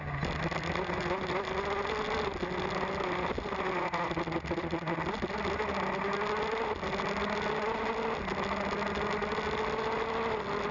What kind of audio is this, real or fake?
real